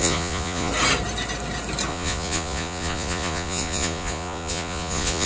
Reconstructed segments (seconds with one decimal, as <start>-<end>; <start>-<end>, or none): 0.0-0.7; 1.9-5.3